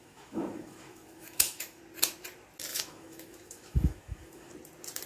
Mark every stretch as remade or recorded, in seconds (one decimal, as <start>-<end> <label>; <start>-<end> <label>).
0.0-1.8 remade; 1.8-2.7 recorded; 2.7-4.5 remade; 4.5-5.1 recorded